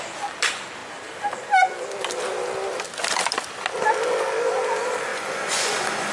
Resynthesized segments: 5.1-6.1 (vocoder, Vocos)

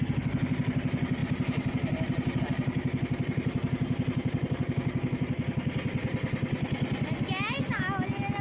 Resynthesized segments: none

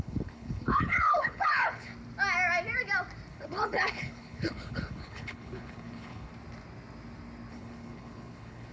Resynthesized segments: 0.0-1.9 (codec, HILCodec); 3.3-6.3; 7.5-8.7

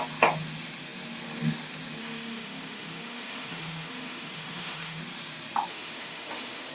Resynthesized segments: 2.0-5.0 (autoencoder, DAC-VAE); 5.7-6.7

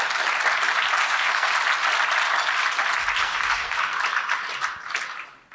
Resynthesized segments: 1.0-1.5 (codec, SNAC); 3.2-4.0

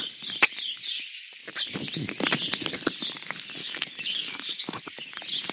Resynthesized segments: 3.6-4.8 (autoencoder, DAC-VAE)

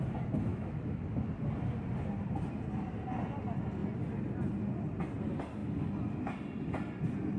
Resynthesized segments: 0.5-1.0 (autoencoder, DAC-VAE)